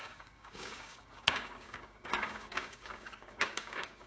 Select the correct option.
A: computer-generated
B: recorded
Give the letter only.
A